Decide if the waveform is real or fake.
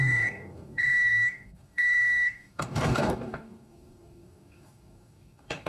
fake